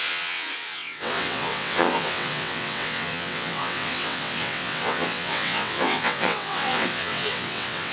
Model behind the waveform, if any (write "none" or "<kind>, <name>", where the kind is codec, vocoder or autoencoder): vocoder, WaveNeXt